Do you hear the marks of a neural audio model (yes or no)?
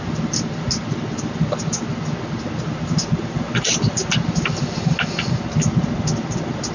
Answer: no